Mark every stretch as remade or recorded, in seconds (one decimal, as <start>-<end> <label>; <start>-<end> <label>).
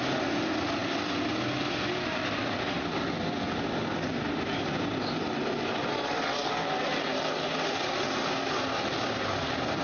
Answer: 0.0-9.8 recorded